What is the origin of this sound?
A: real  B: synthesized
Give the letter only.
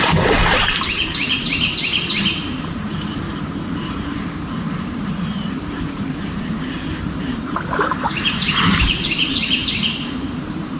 B